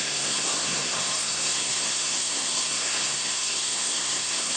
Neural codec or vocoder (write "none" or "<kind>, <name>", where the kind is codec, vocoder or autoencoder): codec, SNAC